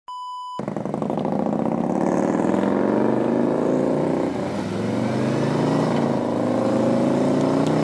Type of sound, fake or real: real